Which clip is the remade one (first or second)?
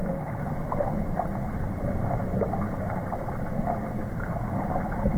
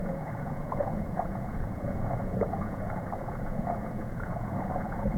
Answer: second